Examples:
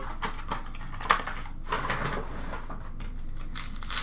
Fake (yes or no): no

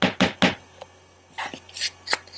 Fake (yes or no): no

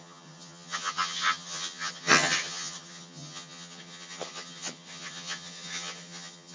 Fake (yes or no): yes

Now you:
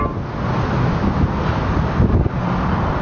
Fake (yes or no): no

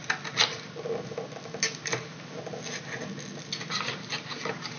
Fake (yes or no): no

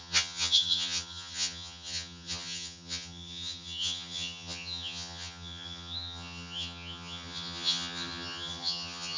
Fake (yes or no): yes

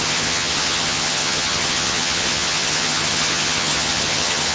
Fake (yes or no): yes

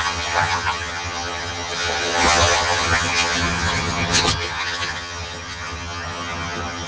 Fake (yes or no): yes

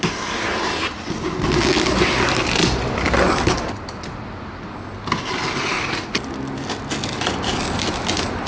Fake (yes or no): no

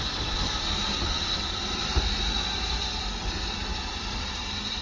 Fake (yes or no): no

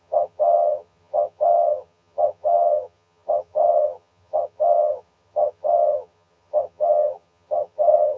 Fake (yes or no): yes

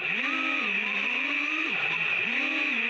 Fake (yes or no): no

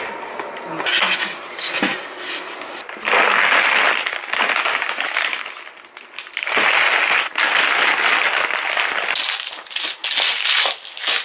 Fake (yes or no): no